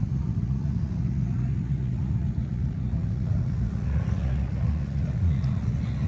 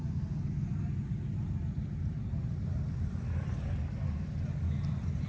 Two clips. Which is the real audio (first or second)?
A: second